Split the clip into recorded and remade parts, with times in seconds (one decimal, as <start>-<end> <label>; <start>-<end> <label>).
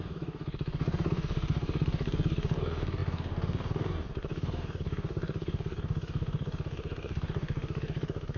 0.0-8.4 remade